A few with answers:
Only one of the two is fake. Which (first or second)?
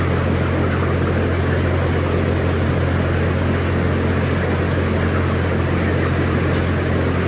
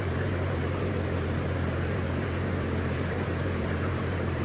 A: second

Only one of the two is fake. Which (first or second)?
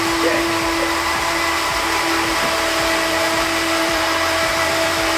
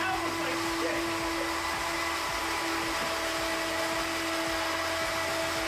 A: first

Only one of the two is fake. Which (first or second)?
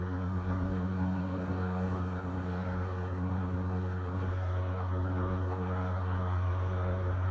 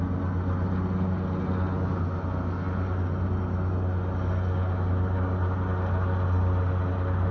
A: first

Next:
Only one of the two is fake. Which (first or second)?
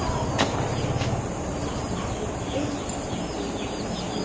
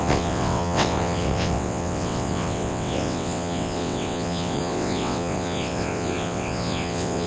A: second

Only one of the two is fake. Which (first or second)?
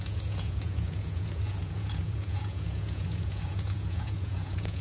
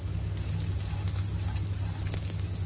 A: first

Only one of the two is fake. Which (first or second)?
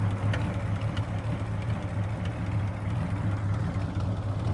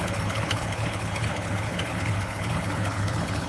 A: second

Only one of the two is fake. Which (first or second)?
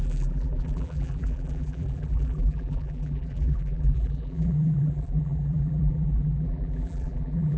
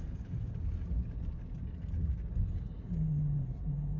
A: first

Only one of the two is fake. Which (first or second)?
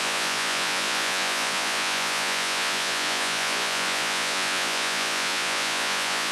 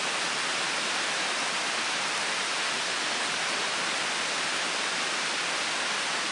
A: first